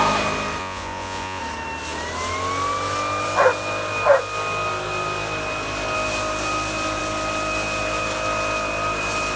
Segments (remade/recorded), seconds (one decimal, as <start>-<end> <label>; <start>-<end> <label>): 0.0-0.6 recorded; 0.6-1.4 remade; 1.4-9.4 recorded